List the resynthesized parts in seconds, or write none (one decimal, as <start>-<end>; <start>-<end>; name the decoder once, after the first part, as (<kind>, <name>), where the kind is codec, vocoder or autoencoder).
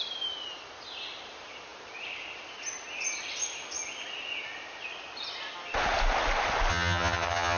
6.7-7.6 (vocoder, HiFi-GAN)